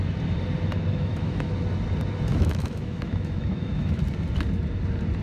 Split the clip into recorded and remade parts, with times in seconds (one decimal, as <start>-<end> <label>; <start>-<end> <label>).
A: 0.0-0.9 recorded; 0.9-1.5 remade; 1.5-2.3 recorded; 2.3-4.0 remade; 4.0-5.2 recorded